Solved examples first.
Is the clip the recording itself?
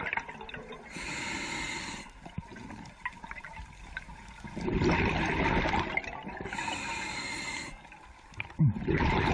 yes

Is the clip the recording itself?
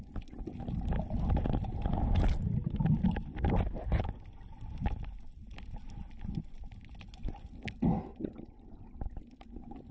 yes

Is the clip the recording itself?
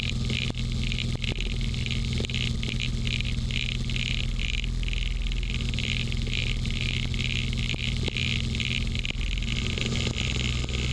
yes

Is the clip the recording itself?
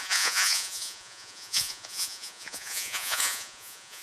no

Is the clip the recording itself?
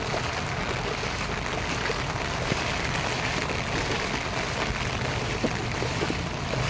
yes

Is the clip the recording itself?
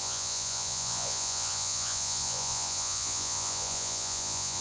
no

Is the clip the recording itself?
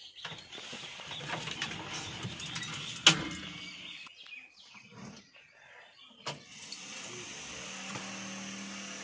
yes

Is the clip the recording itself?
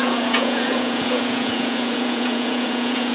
no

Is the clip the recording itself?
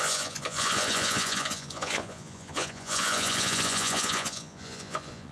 no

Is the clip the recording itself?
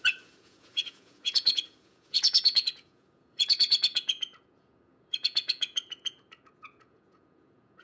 no